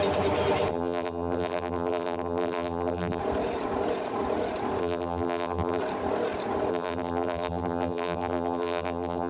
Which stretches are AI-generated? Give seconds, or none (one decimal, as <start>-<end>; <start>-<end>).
0.7-3.2; 4.8-5.8; 6.7-9.3